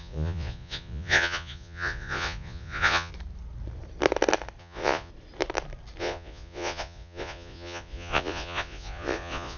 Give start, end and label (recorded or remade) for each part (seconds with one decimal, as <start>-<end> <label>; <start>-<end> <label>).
0.0-3.1 remade; 3.1-4.6 recorded; 4.6-5.1 remade; 5.1-6.0 recorded; 6.0-9.6 remade